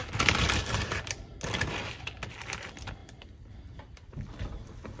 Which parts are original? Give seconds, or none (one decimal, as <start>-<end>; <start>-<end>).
1.3-2.3